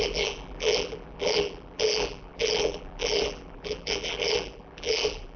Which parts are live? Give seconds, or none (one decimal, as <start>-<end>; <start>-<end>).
none